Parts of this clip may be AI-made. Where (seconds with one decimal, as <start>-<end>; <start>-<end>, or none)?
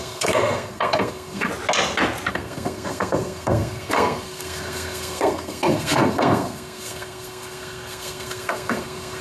0.0-1.5; 2.3-9.2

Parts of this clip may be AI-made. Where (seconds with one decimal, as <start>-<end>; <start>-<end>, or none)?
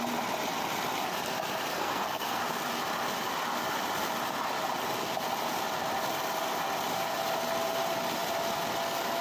1.7-2.4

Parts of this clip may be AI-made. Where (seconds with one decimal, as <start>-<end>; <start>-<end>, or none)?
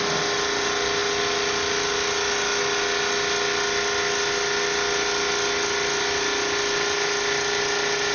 none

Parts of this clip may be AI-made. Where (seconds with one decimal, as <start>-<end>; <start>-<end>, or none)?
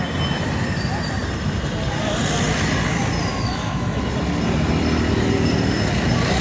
3.3-4.0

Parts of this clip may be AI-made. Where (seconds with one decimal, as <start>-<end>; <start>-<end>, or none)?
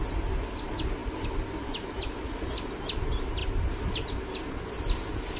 none